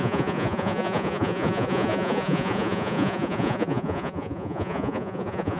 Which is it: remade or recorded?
remade